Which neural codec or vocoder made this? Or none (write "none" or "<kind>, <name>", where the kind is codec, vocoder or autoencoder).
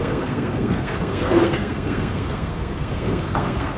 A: codec, SNAC